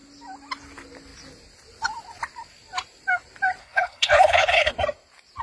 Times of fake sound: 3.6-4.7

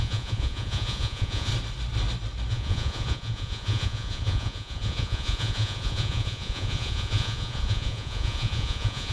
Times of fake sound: 0.0-1.5; 2.5-9.1

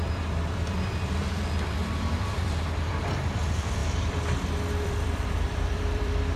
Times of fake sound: 0.0-6.4